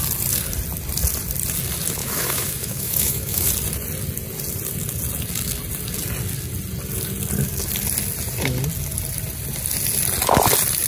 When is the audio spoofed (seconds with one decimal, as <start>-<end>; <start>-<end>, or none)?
2.0-3.5